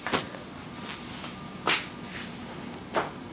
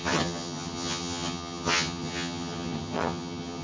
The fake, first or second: second